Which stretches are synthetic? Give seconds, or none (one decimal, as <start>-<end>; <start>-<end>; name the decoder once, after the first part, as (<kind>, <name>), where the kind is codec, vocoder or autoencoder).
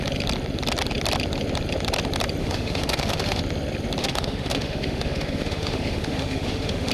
2.4-3.4 (autoencoder, DAC-VAE); 4.0-6.9